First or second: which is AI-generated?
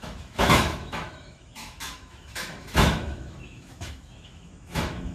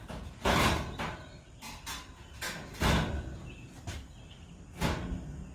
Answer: first